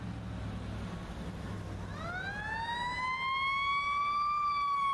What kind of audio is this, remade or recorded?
recorded